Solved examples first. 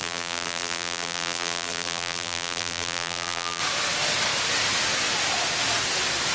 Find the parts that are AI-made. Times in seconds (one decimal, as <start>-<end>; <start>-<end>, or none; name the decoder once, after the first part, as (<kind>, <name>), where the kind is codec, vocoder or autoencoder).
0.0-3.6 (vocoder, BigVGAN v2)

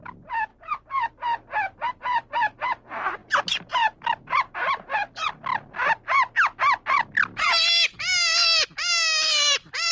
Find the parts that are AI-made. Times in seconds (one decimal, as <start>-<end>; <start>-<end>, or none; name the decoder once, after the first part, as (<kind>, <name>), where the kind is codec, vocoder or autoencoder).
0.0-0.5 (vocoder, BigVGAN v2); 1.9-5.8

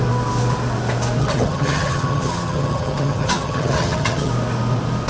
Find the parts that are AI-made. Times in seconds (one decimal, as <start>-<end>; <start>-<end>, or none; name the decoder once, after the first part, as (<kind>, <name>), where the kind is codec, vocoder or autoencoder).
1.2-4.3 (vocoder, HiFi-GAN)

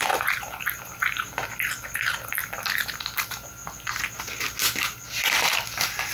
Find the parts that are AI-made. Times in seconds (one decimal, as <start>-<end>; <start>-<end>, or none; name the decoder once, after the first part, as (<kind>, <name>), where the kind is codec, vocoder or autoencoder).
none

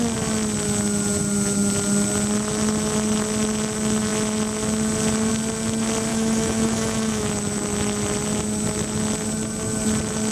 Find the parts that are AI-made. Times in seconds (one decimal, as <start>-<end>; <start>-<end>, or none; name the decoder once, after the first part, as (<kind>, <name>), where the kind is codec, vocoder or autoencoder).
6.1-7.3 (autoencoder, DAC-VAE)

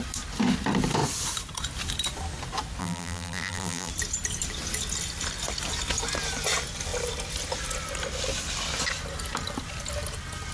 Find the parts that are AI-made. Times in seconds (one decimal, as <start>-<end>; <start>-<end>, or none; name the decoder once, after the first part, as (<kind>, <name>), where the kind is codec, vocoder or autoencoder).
2.8-3.9 (vocoder, BigVGAN v2)

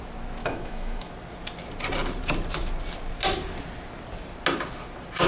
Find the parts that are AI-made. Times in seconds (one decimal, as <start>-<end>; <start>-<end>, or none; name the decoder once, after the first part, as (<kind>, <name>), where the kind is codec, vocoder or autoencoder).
0.4-1.1 (autoencoder, DAC-VAE)

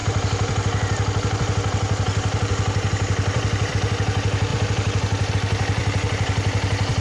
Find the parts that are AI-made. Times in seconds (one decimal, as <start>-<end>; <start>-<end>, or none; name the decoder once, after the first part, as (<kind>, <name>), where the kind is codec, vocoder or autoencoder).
0.0-3.7 (vocoder, BigVGAN v2); 4.5-5.3; 5.8-7.0